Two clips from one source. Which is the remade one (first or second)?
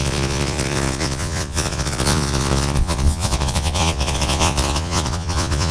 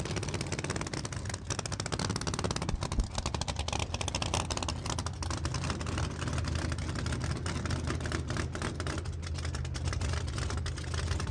first